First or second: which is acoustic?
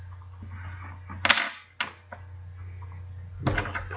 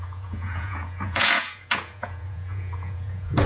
first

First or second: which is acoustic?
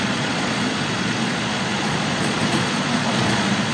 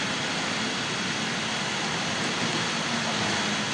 second